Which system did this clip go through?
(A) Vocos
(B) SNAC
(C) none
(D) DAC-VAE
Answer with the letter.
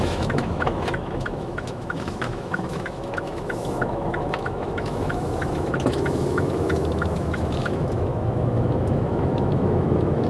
D